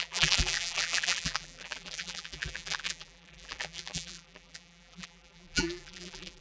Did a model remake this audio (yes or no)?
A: yes